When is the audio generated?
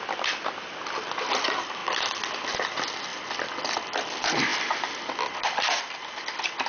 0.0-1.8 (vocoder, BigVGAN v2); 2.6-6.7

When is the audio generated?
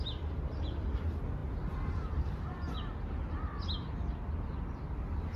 none